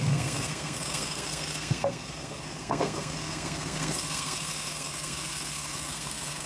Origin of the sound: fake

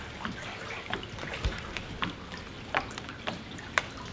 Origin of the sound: real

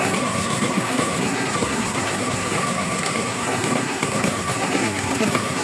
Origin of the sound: fake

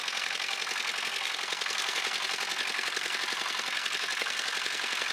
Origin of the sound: fake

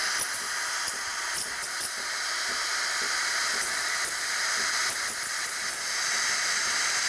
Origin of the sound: real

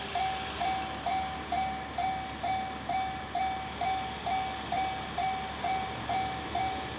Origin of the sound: real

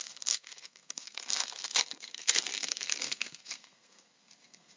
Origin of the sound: fake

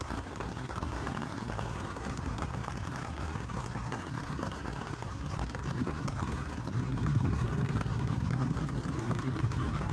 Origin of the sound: fake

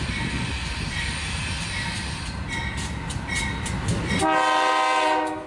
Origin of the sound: real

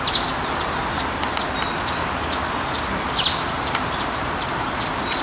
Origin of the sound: real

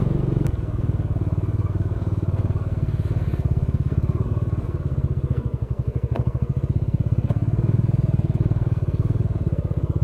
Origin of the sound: fake